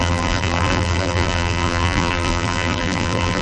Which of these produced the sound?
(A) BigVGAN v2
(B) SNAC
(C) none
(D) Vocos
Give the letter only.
A